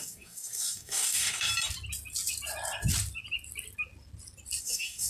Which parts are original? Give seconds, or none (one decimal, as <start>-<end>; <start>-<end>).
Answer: 1.5-4.6